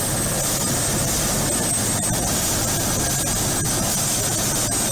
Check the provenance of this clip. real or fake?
real